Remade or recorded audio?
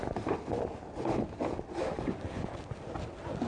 recorded